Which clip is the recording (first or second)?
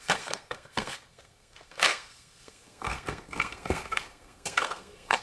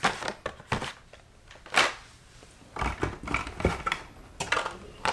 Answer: second